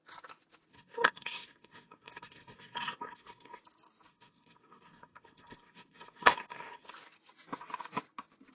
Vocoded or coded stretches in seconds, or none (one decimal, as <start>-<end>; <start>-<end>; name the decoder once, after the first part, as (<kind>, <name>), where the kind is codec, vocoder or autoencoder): 0.7-3.6 (codec, SNAC); 4.1-6.9